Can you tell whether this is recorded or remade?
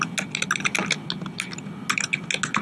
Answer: recorded